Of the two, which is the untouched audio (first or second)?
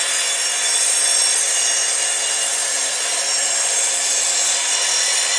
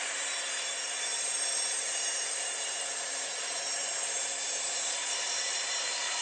first